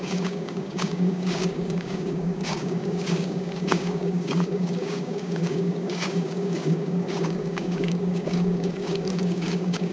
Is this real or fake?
fake